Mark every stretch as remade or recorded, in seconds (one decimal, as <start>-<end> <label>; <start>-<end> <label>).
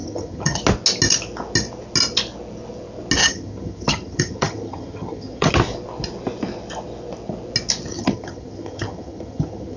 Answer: 0.0-0.6 remade; 0.6-3.2 recorded; 3.2-5.5 remade; 5.5-7.9 recorded; 7.9-9.8 remade